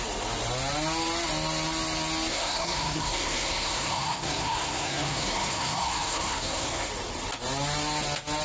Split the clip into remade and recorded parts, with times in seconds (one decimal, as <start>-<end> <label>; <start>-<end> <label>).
0.0-2.3 recorded; 2.3-6.9 remade; 6.9-8.4 recorded